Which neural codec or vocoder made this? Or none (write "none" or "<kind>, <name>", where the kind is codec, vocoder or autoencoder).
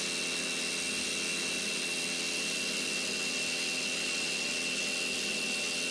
none